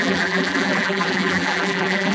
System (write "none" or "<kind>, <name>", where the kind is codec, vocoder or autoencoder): vocoder, BigVGAN v2